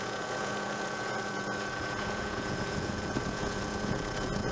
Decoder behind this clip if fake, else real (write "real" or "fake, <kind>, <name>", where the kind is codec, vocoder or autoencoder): fake, vocoder, Vocos